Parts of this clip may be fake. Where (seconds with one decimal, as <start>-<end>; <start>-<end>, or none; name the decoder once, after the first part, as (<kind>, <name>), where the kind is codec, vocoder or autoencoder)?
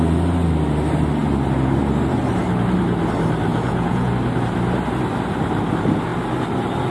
3.5-4.1 (vocoder, Vocos)